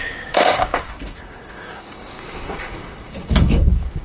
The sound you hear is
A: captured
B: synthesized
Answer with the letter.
B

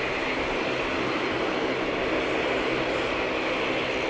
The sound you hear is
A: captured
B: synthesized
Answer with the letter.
A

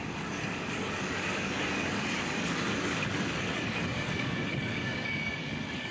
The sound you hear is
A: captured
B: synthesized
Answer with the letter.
B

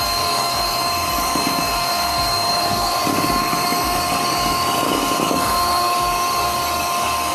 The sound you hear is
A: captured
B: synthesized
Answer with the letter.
B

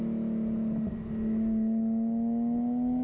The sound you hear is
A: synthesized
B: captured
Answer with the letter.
B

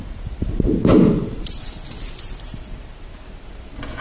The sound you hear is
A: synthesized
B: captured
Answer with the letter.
B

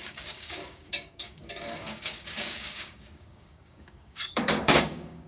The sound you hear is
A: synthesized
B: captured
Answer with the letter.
A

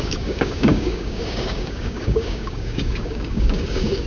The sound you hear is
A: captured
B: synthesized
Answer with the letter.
B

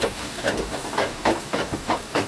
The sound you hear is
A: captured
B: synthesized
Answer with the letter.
B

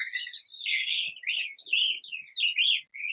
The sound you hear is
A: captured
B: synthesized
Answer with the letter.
A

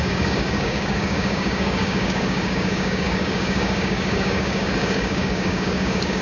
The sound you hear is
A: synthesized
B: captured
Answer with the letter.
A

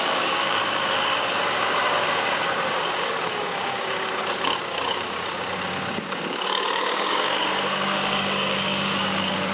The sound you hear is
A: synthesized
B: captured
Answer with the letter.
A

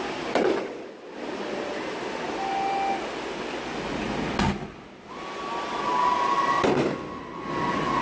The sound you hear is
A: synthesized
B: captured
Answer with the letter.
B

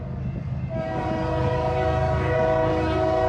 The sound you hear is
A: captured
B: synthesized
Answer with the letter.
B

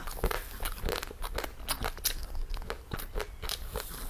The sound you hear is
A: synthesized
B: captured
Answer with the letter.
B